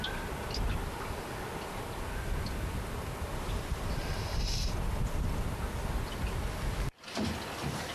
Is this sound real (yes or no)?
yes